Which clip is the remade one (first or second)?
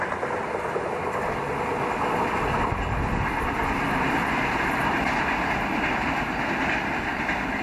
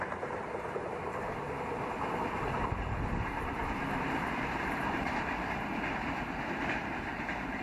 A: second